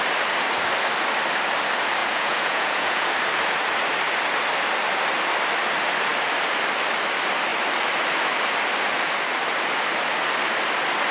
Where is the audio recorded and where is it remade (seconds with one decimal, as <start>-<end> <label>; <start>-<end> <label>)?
0.0-2.0 recorded; 2.0-3.1 remade; 3.1-11.1 recorded